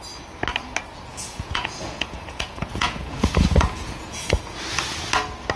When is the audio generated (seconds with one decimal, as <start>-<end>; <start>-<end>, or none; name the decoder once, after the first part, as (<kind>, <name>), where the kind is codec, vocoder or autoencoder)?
1.1-4.4 (vocoder, Vocos)

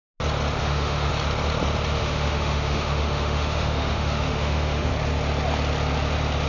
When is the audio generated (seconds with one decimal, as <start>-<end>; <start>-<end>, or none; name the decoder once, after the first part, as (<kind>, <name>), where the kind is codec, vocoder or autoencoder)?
0.6-1.1 (autoencoder, DAC-VAE); 2.0-4.9